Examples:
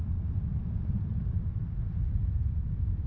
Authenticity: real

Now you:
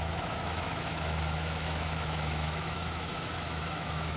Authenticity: fake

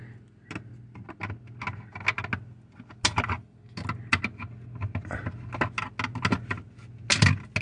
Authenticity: real